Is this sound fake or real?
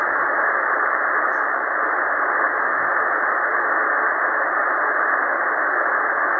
real